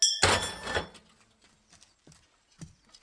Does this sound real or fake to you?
real